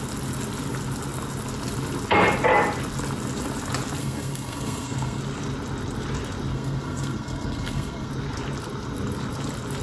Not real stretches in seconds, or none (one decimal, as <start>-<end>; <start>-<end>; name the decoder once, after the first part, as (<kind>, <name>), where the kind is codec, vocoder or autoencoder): 4.0-5.2 (codec, SNAC); 6.5-8.1